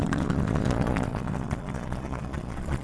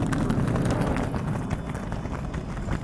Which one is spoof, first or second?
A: first